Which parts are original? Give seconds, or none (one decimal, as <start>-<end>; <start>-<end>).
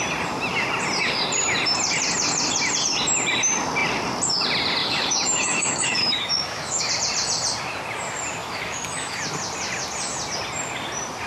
0.0-4.8; 6.9-8.4; 9.2-11.3